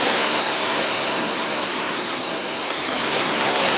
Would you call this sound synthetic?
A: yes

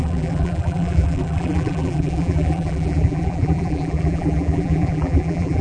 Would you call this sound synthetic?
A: yes